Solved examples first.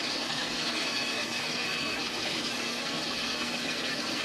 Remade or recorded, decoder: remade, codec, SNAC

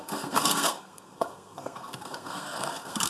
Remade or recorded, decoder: remade, codec, SNAC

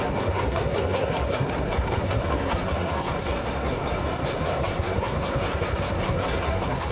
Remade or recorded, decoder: remade, codec, SNAC